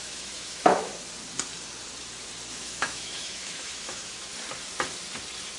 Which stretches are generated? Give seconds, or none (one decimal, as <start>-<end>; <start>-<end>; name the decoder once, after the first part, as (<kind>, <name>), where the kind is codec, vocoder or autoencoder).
0.0-0.9 (autoencoder, DAC-VAE); 2.5-4.3